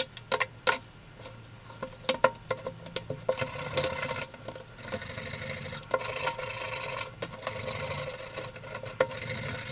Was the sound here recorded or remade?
recorded